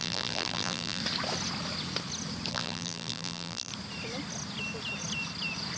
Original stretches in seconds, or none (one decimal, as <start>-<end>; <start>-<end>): 1.0-2.5; 3.7-5.8